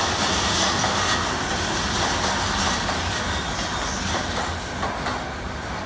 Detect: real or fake real